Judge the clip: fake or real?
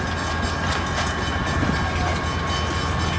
real